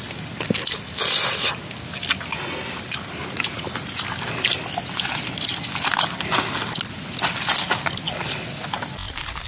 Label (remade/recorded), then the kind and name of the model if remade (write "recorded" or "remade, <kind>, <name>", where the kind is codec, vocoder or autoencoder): recorded